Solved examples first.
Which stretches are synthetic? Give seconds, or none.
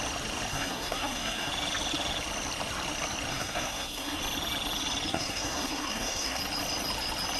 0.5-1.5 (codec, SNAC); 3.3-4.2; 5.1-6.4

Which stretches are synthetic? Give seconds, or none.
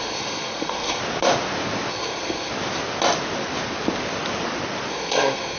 0.0-1.0 (codec, SNAC); 1.9-2.5; 4.9-5.6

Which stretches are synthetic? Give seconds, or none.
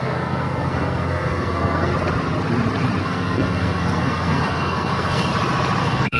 0.0-1.9 (codec, SNAC); 3.0-5.3; 5.8-6.2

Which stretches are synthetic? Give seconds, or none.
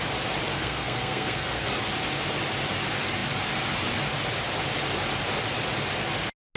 0.5-1.7 (codec, SNAC)